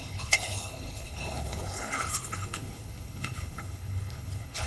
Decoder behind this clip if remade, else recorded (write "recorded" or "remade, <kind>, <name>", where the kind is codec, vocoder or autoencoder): remade, codec, HILCodec